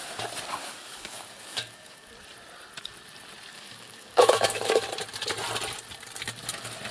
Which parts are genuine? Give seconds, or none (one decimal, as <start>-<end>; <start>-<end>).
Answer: 0.0-0.6; 2.1-3.5; 4.8-6.9